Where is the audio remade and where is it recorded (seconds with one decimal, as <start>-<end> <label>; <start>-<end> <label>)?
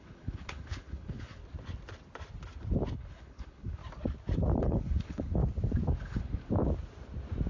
0.0-1.4 remade; 1.4-2.9 recorded; 2.9-3.8 remade; 3.8-4.6 recorded; 4.6-5.4 remade; 5.4-6.0 recorded; 6.0-6.4 remade; 6.4-7.5 recorded